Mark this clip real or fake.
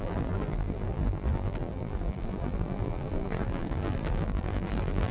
fake